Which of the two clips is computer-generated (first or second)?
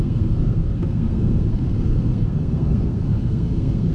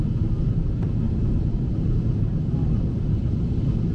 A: first